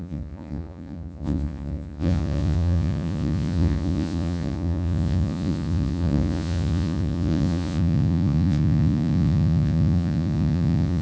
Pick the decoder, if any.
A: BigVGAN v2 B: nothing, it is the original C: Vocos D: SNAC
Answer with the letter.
C